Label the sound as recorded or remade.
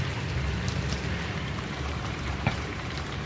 remade